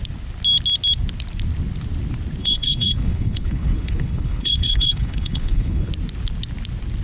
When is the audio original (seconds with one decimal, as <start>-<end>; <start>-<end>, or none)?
0.0-2.4; 5.9-7.0